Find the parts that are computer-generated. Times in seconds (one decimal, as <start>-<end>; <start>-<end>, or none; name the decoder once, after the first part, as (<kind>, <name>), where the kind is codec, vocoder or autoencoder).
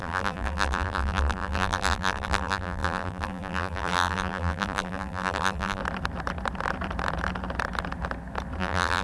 0.0-5.8 (vocoder, BigVGAN v2); 8.6-9.0